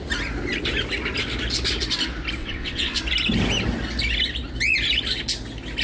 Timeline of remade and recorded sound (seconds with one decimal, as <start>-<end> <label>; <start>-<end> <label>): 0.0-2.4 recorded; 2.4-3.0 remade; 3.0-5.8 recorded